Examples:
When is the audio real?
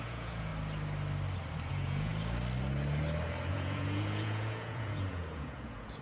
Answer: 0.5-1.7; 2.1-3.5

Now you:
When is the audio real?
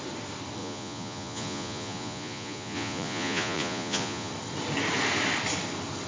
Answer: 0.0-0.6; 4.3-6.1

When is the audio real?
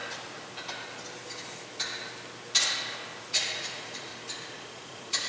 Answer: 0.0-3.2; 4.1-4.7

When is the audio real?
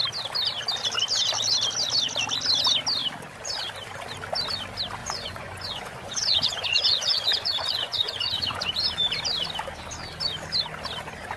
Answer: 0.0-5.0; 8.7-11.4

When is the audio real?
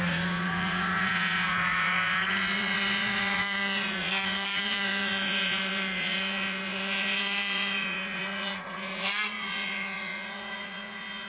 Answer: none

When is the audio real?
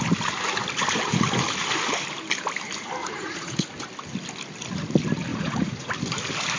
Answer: 0.0-3.0; 3.7-5.3; 5.9-6.6